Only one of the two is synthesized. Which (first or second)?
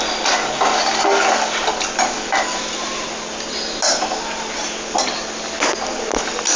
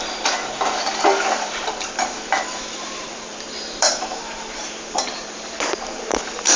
second